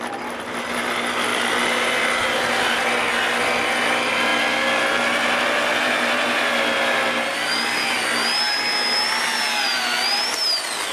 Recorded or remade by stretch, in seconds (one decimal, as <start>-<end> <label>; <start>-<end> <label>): 0.0-10.9 recorded